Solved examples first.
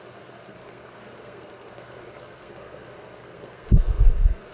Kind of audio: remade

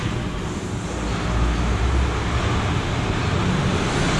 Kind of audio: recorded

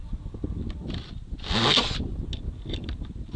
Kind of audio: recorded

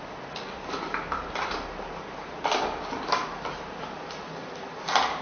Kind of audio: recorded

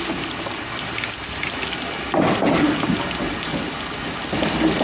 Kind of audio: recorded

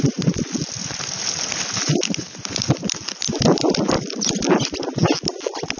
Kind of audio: recorded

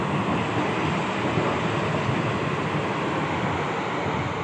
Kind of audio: recorded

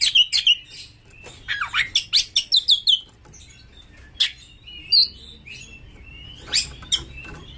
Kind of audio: recorded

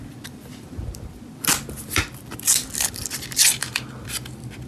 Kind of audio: remade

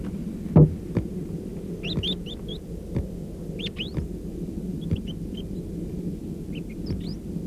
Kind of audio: recorded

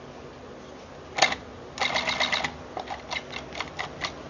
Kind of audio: recorded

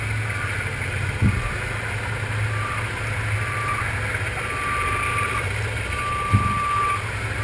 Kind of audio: recorded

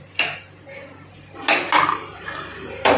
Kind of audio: recorded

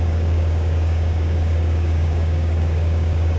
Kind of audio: remade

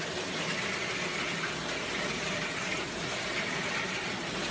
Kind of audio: recorded